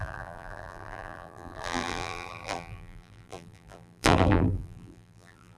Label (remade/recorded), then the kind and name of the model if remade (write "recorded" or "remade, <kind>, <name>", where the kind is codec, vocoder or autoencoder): remade, vocoder, BigVGAN v2